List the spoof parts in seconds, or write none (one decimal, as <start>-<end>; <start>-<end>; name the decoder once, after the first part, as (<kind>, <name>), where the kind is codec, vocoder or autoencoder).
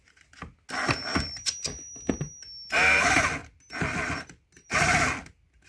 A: none